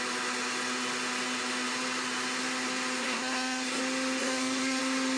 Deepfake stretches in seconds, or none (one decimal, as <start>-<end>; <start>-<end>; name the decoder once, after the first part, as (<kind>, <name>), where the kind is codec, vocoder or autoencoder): 3.0-3.8 (codec, SNAC); 4.2-4.8